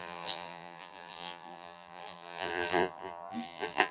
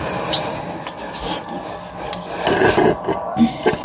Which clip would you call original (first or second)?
second